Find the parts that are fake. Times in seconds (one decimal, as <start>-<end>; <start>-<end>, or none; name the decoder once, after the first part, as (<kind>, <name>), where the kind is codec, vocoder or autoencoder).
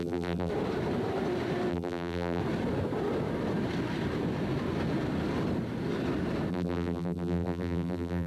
0.0-0.5 (vocoder, BigVGAN v2); 1.7-2.4; 6.5-8.3